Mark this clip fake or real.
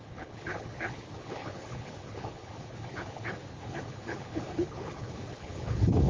fake